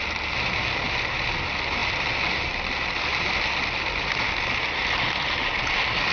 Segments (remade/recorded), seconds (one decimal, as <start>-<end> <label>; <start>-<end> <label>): 0.0-6.1 recorded